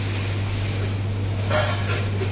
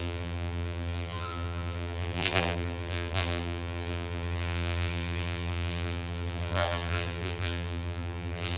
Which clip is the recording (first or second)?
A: first